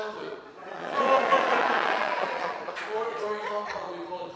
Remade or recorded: remade